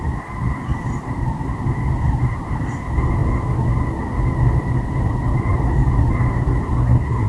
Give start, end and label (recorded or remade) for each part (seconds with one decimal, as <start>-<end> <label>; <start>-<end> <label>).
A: 0.0-6.8 recorded; 6.8-7.3 remade